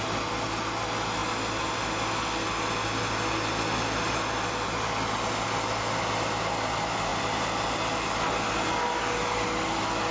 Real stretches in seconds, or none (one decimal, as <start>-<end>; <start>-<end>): 0.0-10.1